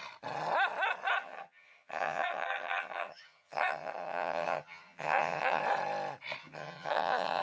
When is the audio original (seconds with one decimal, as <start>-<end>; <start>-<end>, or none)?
0.0-1.2; 5.6-6.4